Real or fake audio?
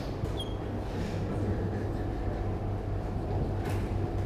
real